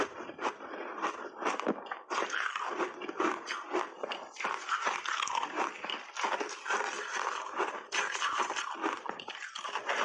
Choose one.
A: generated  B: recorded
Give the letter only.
B